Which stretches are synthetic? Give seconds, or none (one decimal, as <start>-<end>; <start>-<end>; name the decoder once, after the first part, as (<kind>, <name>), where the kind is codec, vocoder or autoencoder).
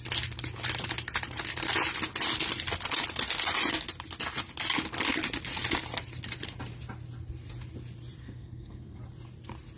8.2-9.0 (codec, SNAC)